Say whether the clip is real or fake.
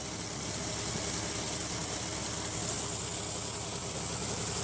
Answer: real